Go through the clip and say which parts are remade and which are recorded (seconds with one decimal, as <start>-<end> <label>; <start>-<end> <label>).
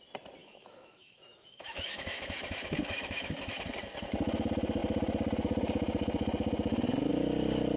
0.0-0.4 recorded; 0.4-3.5 remade; 3.5-7.8 recorded